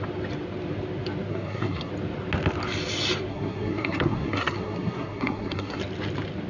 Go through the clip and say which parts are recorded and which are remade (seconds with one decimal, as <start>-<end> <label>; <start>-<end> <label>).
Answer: 0.0-1.3 recorded; 1.3-1.9 remade; 1.9-3.3 recorded; 3.3-5.8 remade; 5.8-6.5 recorded